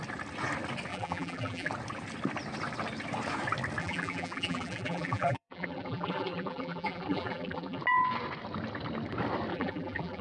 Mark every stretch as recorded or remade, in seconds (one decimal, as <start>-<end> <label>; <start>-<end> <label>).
0.0-0.9 recorded; 0.9-1.7 remade; 1.7-3.8 recorded; 3.8-7.8 remade; 7.8-9.5 recorded; 9.5-10.2 remade